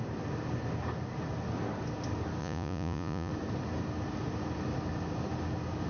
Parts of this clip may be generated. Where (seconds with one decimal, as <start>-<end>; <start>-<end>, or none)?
2.4-3.3